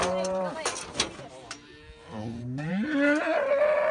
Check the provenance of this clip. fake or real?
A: fake